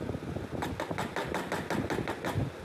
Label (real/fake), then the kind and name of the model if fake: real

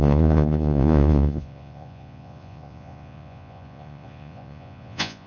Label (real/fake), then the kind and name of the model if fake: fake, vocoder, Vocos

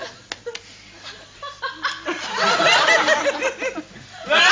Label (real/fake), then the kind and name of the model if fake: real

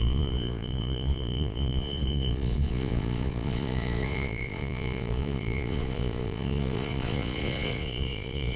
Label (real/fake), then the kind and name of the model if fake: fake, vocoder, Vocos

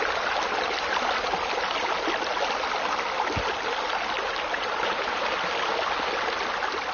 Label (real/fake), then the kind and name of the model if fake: real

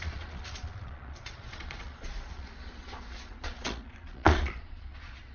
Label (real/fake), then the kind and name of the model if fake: fake, vocoder, Vocos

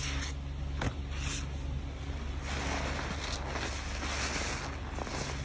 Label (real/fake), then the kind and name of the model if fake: real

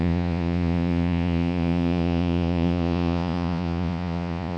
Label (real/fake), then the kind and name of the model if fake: fake, vocoder, Vocos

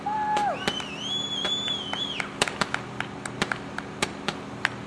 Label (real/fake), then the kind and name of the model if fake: real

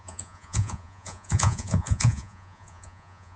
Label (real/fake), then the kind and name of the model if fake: fake, vocoder, Vocos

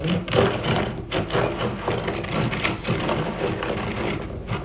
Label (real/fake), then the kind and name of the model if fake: real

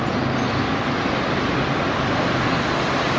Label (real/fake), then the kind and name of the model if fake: real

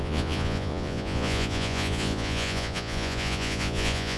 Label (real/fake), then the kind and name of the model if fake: fake, vocoder, Vocos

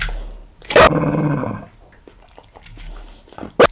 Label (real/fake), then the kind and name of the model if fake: real